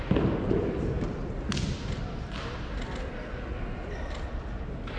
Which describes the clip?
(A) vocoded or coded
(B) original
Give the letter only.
B